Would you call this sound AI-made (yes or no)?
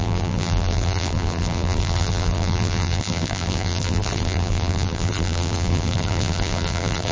yes